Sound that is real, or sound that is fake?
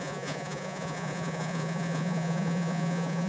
fake